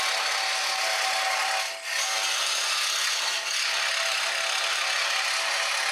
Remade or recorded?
recorded